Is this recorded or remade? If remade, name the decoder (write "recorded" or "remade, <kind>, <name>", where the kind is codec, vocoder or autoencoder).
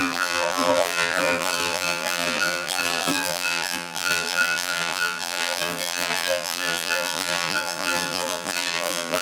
remade, vocoder, BigVGAN v2